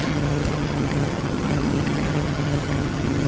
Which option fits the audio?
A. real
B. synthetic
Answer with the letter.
B